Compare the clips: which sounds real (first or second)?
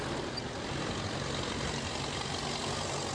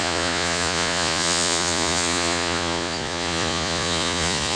first